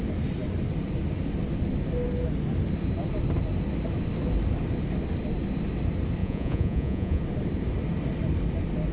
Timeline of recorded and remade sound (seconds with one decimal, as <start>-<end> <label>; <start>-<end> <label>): 0.0-6.2 recorded; 6.2-7.2 remade; 7.2-8.9 recorded